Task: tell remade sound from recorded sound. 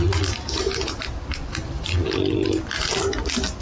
recorded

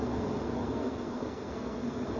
remade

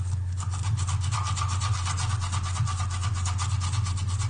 recorded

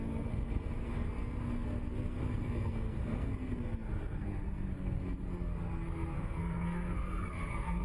remade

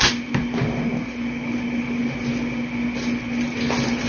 recorded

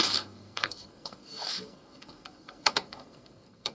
remade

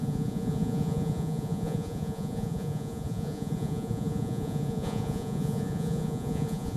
remade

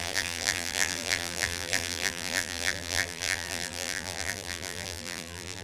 remade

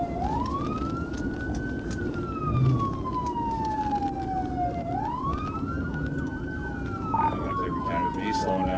recorded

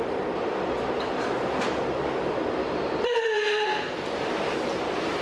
remade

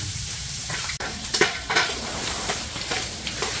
remade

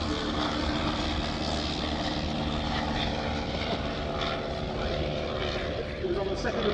recorded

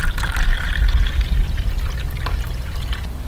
remade